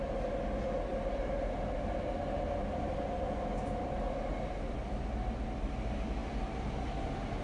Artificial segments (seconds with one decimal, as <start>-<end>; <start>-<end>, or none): none